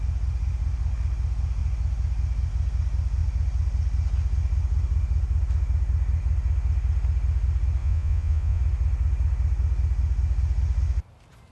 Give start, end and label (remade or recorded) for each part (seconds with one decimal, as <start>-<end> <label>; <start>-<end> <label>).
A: 0.0-7.8 recorded; 7.8-8.6 remade; 8.6-11.5 recorded